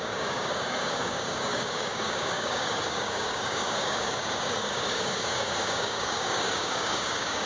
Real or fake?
fake